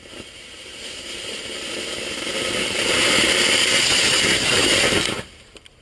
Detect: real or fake fake